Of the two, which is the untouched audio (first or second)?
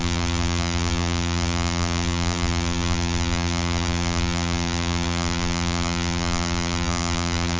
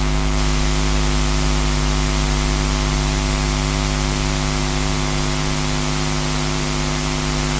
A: second